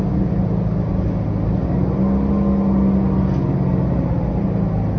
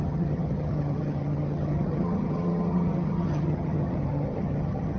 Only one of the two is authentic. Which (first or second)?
first